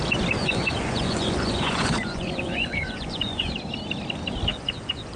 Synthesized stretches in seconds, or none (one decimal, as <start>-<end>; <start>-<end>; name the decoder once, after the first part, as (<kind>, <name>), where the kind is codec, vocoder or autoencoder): 0.4-3.5 (vocoder, Vocos); 4.5-5.2